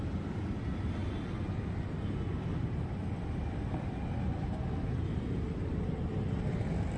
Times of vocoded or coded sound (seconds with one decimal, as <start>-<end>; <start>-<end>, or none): none